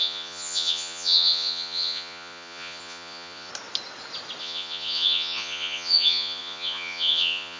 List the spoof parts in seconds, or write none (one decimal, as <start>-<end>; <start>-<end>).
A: 0.0-3.5; 4.4-7.6